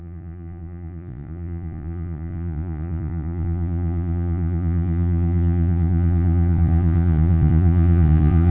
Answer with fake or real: fake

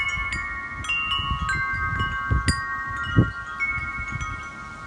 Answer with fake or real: real